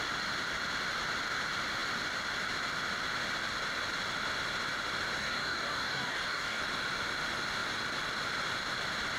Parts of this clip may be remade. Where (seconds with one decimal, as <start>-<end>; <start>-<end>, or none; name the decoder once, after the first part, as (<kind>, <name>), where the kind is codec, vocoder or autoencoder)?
5.2-6.6 (codec, DAC)

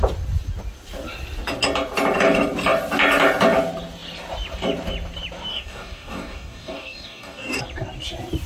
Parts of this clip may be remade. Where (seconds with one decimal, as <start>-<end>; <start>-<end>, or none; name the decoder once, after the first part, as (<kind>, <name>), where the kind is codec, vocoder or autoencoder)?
5.5-7.6 (codec, DAC)

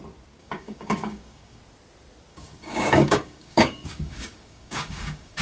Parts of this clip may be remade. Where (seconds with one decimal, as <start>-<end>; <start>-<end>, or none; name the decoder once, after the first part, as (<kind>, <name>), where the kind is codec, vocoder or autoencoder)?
0.4-1.6 (codec, DAC); 2.3-5.4

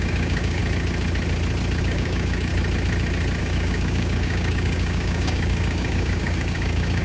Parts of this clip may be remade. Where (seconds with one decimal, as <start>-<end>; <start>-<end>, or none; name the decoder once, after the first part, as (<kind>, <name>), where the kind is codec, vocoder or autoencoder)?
0.0-0.6 (codec, DAC); 1.8-2.5; 3.4-7.0

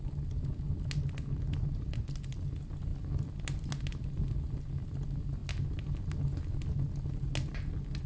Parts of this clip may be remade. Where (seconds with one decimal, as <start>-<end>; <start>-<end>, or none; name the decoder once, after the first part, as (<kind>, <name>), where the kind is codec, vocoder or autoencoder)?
none